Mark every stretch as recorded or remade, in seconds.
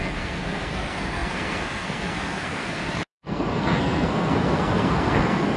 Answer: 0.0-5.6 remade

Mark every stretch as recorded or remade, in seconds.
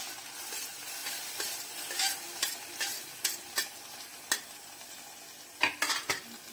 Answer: 0.0-6.5 recorded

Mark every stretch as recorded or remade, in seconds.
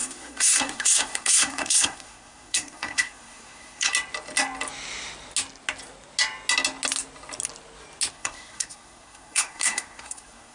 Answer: 0.0-3.9 remade; 3.9-8.1 recorded; 8.1-10.5 remade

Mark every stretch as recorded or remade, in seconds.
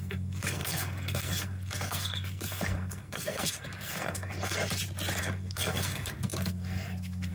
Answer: 0.0-4.6 remade; 4.6-5.2 recorded; 5.2-7.3 remade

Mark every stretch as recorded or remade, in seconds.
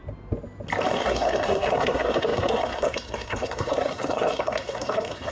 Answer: 0.0-0.9 recorded; 0.9-5.3 remade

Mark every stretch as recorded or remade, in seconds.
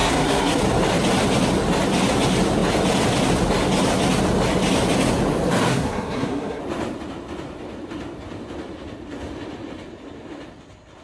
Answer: 0.0-0.6 remade; 0.6-5.7 recorded; 5.7-6.6 remade; 6.6-11.0 recorded